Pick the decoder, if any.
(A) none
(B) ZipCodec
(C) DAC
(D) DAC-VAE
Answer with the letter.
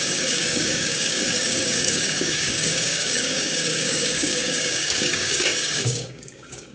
C